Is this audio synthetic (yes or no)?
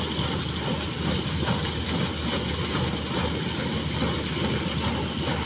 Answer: no